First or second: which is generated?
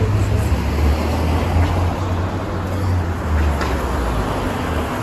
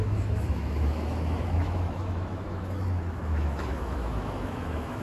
second